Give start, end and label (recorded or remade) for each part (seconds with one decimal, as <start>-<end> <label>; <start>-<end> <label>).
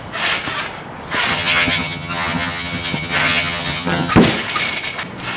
0.0-1.3 recorded; 1.3-4.1 remade; 4.1-5.4 recorded